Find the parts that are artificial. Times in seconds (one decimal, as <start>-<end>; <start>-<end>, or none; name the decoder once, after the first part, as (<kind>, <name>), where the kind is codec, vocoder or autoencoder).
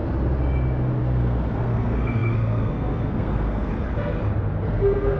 1.0-3.7 (codec, SNAC); 4.7-5.2